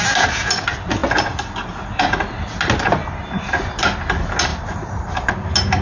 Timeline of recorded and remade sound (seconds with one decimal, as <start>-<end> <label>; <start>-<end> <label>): 0.0-4.5 recorded; 4.5-5.3 remade; 5.3-5.8 recorded